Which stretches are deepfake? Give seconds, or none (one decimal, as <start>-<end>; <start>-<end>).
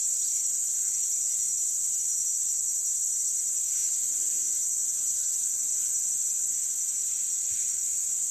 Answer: 2.7-3.4